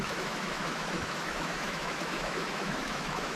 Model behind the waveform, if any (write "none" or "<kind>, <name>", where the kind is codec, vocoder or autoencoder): autoencoder, DAC-VAE